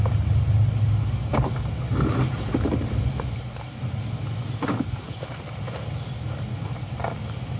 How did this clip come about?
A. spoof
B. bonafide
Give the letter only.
B